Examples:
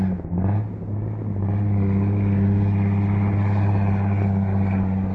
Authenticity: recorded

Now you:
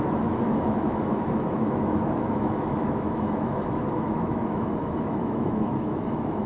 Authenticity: remade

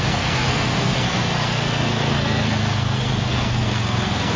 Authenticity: remade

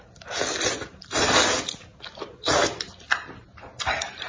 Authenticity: recorded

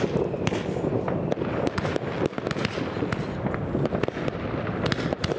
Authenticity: recorded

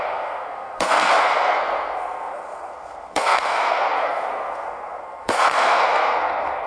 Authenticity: remade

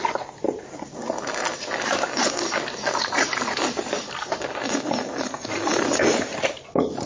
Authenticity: recorded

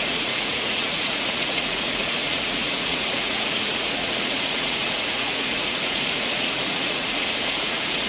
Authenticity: remade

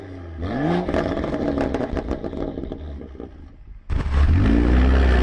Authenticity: recorded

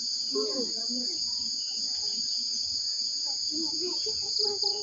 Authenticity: remade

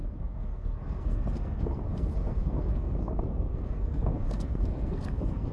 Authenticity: remade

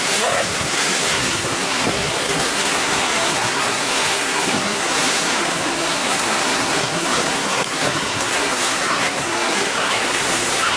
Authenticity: remade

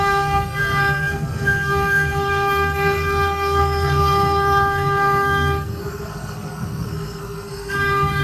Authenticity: remade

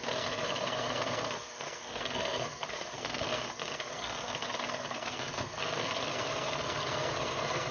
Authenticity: remade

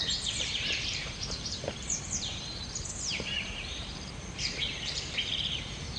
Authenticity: remade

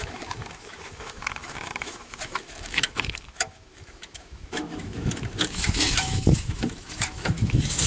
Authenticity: remade